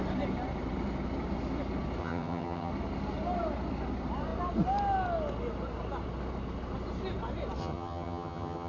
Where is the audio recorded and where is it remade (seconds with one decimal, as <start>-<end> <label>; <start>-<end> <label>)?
0.0-2.0 recorded; 2.0-2.7 remade; 2.7-7.6 recorded; 7.6-8.7 remade